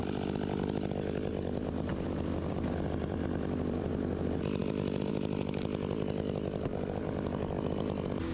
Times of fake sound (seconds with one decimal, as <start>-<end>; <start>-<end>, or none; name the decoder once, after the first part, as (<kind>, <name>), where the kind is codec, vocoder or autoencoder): 1.9-3.9 (vocoder, BigVGAN v2)